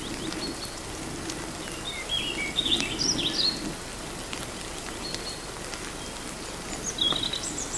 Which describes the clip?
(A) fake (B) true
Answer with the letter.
B